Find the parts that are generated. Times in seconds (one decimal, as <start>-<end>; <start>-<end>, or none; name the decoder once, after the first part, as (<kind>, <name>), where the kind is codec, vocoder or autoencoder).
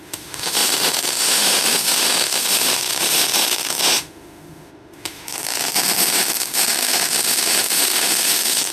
0.0-8.7 (autoencoder, DAC-VAE)